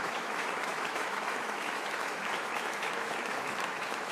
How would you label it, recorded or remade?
remade